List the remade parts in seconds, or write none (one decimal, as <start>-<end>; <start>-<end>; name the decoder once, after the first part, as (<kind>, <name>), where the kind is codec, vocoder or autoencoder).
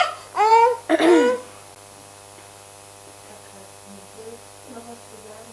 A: none